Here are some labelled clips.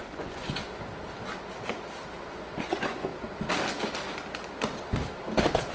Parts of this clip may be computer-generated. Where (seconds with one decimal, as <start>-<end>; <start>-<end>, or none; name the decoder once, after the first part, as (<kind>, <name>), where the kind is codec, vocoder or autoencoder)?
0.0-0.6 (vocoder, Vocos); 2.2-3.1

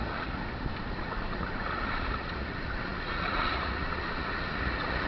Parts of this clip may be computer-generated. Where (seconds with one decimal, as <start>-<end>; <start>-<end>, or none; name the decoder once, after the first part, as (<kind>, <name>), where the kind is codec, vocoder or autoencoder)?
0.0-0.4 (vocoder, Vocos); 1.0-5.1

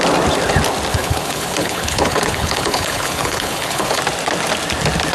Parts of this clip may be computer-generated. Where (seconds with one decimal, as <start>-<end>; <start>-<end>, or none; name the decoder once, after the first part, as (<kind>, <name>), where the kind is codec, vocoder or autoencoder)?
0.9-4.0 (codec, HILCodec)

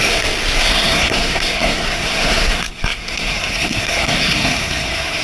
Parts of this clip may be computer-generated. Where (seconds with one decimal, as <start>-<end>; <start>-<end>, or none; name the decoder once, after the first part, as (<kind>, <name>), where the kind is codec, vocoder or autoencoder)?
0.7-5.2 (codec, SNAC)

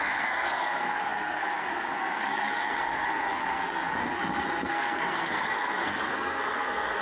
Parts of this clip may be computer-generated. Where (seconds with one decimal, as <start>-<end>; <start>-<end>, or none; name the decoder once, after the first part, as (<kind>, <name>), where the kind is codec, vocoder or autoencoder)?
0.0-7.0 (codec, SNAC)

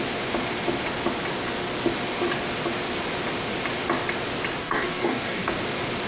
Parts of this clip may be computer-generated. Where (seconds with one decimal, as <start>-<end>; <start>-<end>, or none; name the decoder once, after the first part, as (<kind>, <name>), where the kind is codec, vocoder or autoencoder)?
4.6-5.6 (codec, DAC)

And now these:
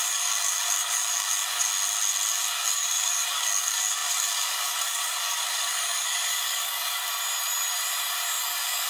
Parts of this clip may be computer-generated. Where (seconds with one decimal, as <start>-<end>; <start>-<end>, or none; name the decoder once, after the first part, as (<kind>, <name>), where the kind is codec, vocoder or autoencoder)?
0.0-1.7 (codec, DAC); 2.3-7.0; 8.4-8.9